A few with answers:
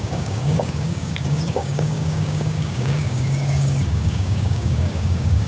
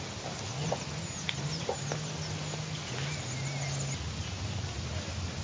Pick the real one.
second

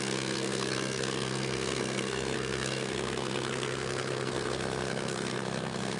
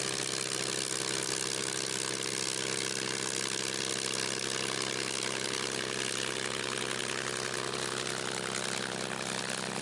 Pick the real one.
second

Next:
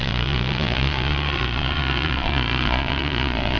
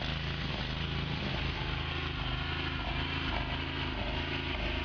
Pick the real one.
second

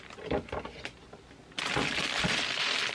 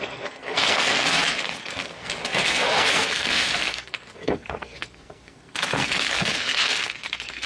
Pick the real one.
first